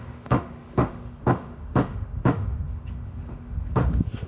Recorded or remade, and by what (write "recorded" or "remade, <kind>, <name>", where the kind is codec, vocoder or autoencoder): remade, autoencoder, DAC-VAE